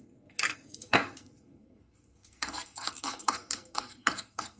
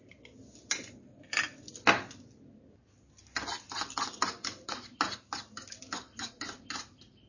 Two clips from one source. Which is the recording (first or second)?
second